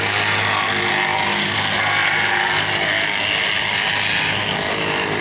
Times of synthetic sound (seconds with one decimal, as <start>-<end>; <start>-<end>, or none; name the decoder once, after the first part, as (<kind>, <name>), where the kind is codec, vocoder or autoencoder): none